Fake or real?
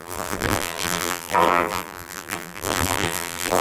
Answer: fake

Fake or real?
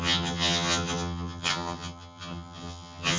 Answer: fake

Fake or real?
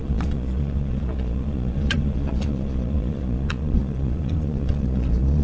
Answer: fake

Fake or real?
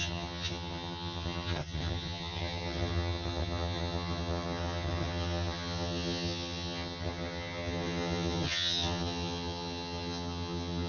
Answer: fake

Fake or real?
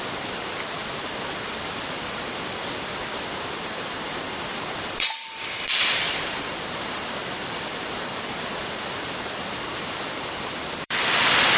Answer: fake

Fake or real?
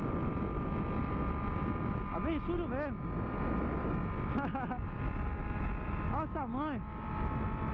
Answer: real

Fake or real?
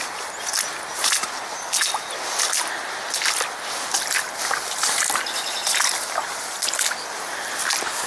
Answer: real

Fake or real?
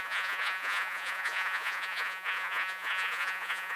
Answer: fake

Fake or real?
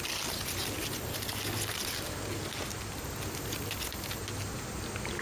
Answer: real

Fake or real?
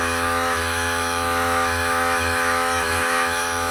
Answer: fake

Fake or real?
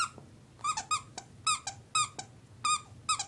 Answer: real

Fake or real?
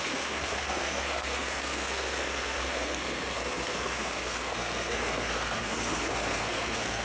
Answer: fake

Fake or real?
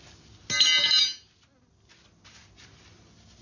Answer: real